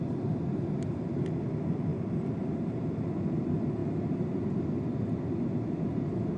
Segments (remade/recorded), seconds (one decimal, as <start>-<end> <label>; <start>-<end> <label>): 0.0-6.4 recorded